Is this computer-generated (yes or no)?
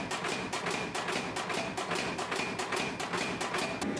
no